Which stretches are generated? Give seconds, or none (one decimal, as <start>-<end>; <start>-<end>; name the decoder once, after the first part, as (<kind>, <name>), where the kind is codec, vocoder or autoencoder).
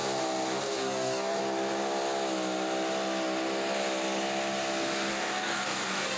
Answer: 0.6-1.4 (codec, DAC); 5.1-6.2